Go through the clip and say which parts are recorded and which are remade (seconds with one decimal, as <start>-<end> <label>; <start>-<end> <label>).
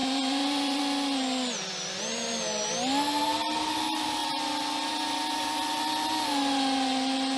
0.0-0.8 remade; 0.8-4.2 recorded; 4.2-4.9 remade; 4.9-7.4 recorded